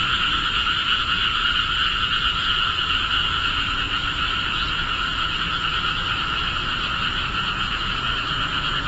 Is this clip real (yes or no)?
no